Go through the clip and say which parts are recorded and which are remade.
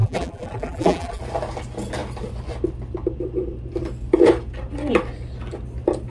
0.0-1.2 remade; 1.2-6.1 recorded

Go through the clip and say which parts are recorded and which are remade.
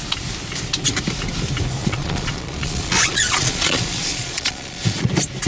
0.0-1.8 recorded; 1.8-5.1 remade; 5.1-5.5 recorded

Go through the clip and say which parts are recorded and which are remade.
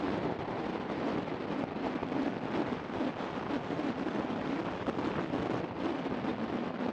0.0-6.3 recorded; 6.3-6.9 remade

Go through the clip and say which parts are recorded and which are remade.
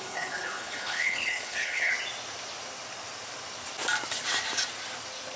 0.0-1.9 remade; 1.9-5.4 recorded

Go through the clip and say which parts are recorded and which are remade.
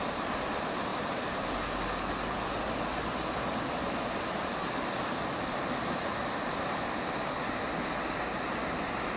0.0-9.2 recorded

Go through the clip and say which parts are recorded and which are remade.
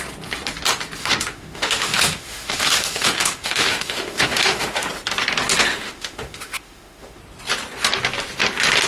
0.0-1.0 recorded; 1.0-4.9 remade; 4.9-5.7 recorded; 5.7-7.2 remade; 7.2-8.9 recorded